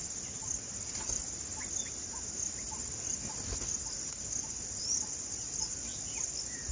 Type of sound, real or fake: fake